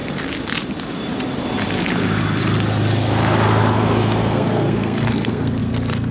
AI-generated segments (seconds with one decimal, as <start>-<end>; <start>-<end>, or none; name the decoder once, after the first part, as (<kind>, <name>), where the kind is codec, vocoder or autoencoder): 3.7-6.1 (codec, SNAC)